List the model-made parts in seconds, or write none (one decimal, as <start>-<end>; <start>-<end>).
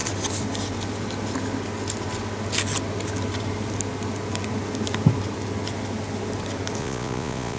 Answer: 6.8-7.6